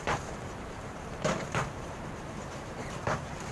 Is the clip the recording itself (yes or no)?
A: no